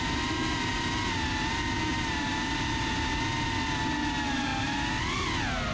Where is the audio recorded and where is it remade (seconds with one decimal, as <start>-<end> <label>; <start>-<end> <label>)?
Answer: 0.0-5.7 recorded